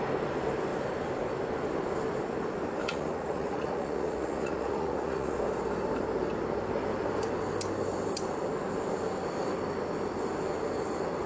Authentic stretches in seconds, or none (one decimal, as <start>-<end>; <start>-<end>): 0.0-2.8; 5.4-11.3

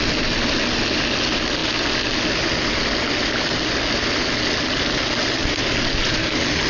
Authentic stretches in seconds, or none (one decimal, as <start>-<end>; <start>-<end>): 0.0-6.7

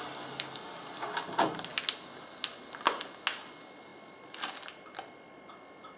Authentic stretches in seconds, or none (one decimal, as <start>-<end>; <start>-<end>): 0.0-3.9; 5.5-6.0

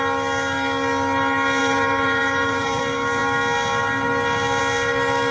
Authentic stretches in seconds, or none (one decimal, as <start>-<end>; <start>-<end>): 0.0-1.6; 2.8-5.3

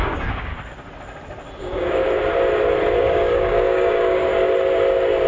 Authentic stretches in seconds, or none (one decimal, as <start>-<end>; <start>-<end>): 0.5-1.6; 2.0-3.0; 4.4-5.3

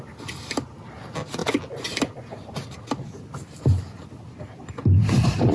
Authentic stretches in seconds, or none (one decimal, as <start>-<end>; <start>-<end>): 0.0-5.5

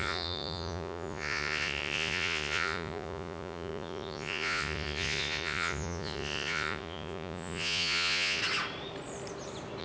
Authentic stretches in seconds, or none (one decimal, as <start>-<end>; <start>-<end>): 8.4-9.8